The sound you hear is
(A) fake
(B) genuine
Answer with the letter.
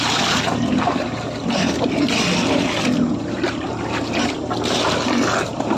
B